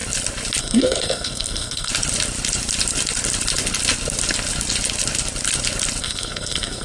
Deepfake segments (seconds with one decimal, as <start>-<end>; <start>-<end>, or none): 0.6-1.9; 6.0-6.8